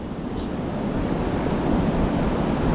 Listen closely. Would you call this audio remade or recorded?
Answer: recorded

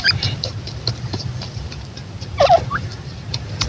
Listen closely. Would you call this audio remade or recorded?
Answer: remade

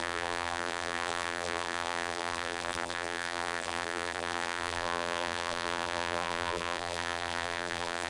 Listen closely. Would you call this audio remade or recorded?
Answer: remade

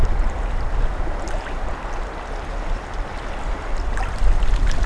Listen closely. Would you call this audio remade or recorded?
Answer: recorded